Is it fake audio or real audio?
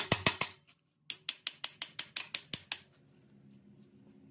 real